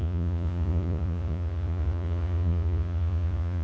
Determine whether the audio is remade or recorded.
remade